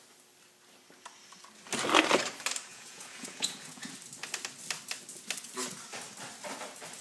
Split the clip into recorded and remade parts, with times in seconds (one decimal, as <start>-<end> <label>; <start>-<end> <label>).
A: 0.0-2.7 recorded; 2.7-3.9 remade; 3.9-7.0 recorded